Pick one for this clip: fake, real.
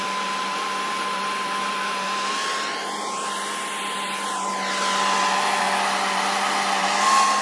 real